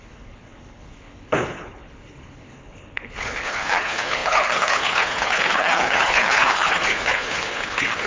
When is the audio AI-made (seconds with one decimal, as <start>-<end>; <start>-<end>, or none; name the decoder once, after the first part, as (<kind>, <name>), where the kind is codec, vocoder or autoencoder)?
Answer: 0.0-8.1 (codec, HILCodec)